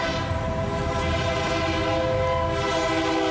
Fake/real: real